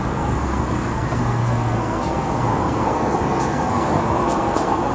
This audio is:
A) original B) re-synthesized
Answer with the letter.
B